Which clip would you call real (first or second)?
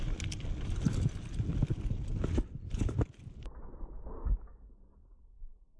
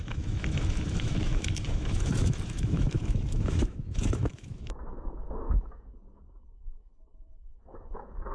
first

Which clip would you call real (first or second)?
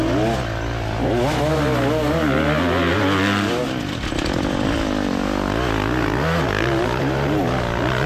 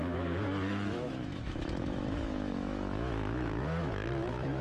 first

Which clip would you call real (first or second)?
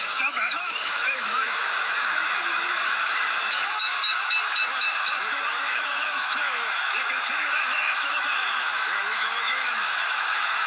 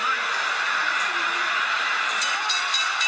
second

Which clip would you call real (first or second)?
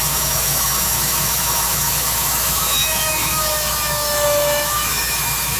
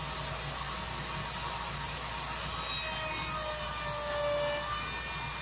second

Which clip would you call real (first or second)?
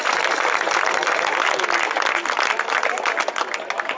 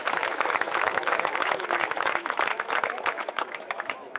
first